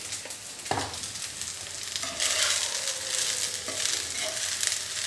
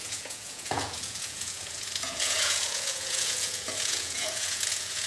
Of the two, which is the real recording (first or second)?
first